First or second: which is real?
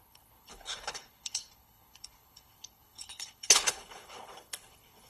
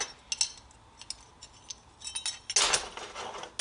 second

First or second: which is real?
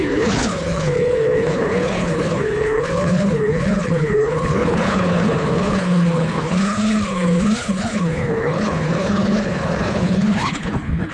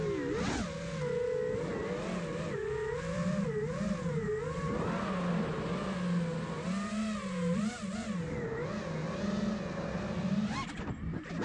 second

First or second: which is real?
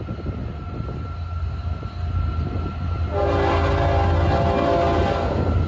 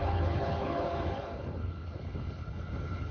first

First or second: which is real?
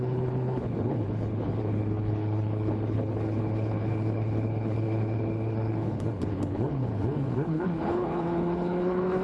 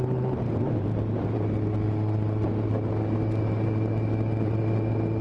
second